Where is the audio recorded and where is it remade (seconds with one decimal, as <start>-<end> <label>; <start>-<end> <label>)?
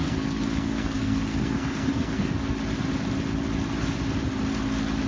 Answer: 0.0-2.5 remade; 2.5-5.1 recorded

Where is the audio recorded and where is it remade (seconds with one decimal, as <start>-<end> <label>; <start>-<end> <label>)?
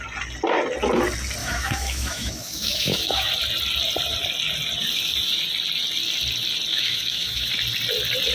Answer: 0.0-1.4 recorded; 1.4-3.3 remade; 3.3-6.7 recorded; 6.7-7.5 remade; 7.5-8.3 recorded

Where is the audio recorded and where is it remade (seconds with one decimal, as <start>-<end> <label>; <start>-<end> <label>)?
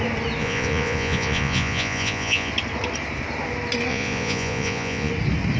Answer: 0.0-0.4 recorded; 0.4-2.5 remade; 2.5-3.9 recorded; 3.9-5.1 remade; 5.1-5.6 recorded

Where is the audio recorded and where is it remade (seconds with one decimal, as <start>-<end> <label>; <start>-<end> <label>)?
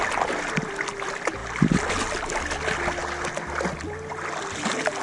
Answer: 0.0-5.0 recorded